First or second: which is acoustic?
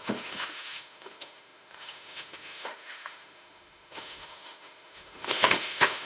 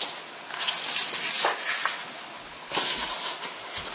second